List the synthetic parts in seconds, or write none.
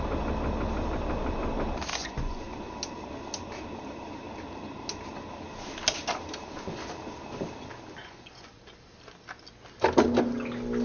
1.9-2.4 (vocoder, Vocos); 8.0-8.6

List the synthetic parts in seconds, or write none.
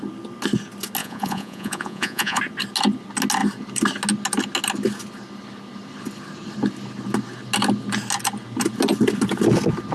1.0-2.4 (vocoder, Vocos)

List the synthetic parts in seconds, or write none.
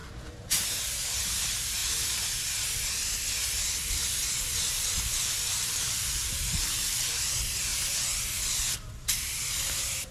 0.0-1.8 (vocoder, BigVGAN v2); 4.7-7.7; 8.7-10.1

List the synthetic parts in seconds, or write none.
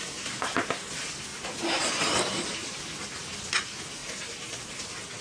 1.3-2.8 (vocoder, BigVGAN v2); 4.0-4.7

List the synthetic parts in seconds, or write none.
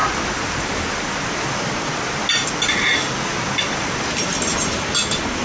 none